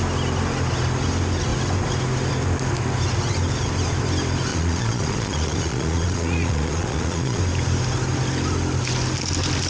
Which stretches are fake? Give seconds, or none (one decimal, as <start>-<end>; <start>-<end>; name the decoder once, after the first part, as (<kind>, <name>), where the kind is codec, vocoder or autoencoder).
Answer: 4.5-7.4 (vocoder, Vocos)